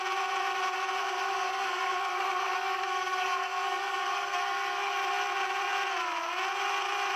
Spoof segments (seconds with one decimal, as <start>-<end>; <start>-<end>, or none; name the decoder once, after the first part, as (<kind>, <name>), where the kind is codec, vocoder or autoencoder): 1.0-4.9 (codec, SNAC)